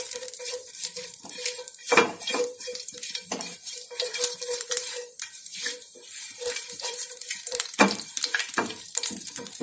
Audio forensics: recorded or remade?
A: remade